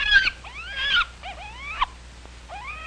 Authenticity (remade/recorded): recorded